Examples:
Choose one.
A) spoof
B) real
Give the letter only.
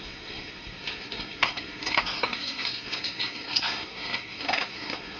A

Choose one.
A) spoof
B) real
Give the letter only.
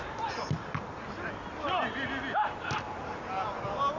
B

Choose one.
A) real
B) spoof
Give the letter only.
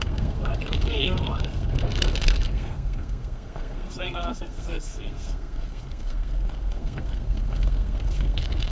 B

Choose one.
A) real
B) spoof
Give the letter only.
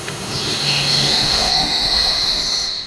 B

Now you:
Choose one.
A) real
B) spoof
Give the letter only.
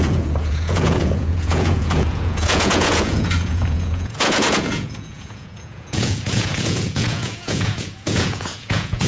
B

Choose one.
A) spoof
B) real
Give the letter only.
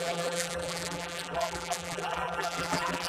A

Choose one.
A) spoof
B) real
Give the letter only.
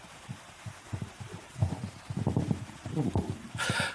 B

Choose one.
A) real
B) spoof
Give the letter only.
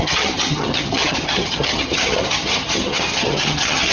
B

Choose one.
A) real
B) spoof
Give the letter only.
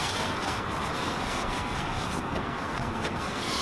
B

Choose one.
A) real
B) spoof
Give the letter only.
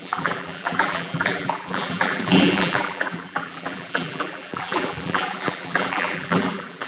B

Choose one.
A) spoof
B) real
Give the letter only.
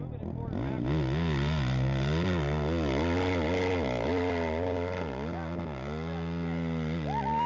B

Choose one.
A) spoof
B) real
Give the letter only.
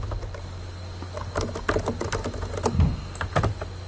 B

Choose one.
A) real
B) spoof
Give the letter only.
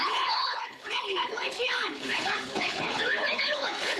B